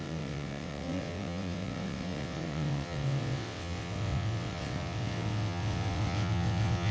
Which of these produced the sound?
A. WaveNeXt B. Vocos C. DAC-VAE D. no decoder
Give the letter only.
A